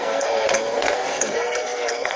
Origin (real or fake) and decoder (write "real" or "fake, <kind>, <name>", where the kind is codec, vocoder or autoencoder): fake, codec, SNAC